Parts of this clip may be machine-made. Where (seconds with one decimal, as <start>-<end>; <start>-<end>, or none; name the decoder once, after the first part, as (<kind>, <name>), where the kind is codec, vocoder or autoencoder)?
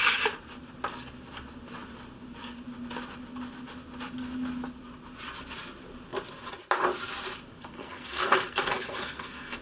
7.6-9.6 (codec, SNAC)